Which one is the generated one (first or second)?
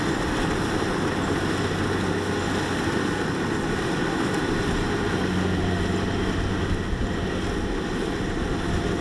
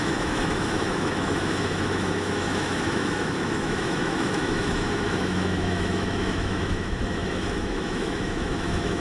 second